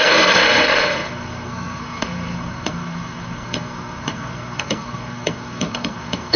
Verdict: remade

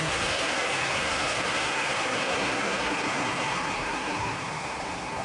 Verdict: remade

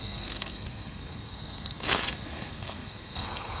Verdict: remade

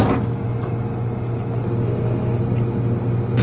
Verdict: recorded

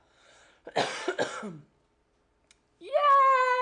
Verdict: recorded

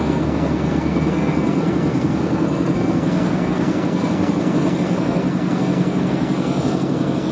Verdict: remade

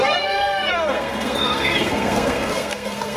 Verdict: remade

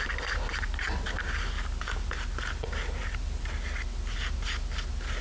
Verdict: recorded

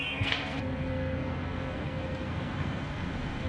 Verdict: remade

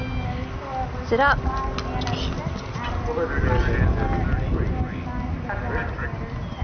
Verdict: recorded